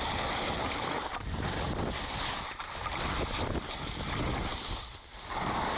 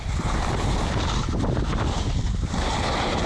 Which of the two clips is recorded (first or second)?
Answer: second